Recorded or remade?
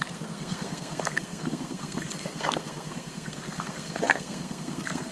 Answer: remade